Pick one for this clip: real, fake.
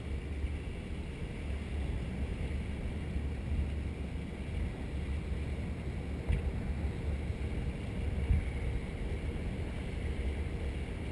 real